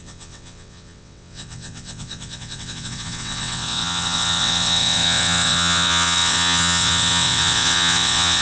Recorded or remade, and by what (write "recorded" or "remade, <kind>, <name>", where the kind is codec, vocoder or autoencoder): remade, vocoder, WaveNeXt